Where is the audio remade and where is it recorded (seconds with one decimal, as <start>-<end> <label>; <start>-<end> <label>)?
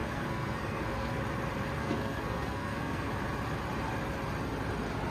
0.0-1.2 remade; 1.2-1.8 recorded; 1.8-3.1 remade; 3.1-5.1 recorded